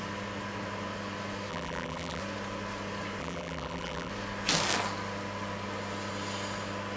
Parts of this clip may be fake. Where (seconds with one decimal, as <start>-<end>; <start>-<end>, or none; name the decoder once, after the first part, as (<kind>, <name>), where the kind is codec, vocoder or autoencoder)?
1.5-2.2 (vocoder, BigVGAN v2); 3.2-4.1